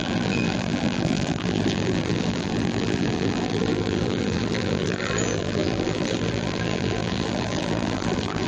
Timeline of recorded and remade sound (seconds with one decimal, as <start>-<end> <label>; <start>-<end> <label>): 0.0-8.5 remade